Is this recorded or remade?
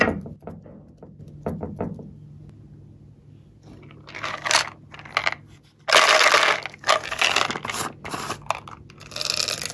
recorded